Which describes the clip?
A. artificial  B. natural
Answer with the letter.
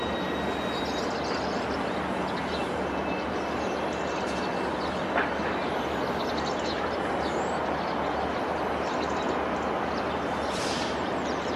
B